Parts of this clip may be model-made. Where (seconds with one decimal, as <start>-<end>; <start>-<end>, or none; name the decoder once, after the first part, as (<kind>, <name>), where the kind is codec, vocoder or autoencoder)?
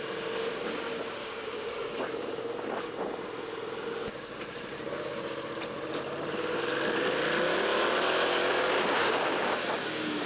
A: 1.2-2.4 (codec, DAC); 9.0-10.3